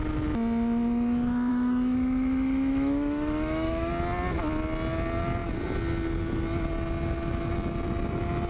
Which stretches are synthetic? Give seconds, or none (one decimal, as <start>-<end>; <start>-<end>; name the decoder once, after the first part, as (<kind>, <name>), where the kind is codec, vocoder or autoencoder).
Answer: 1.5-3.9 (autoencoder, DAC-VAE)